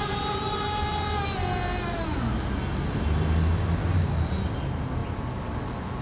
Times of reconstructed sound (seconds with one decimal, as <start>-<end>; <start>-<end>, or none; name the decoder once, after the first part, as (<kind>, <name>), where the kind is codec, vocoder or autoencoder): none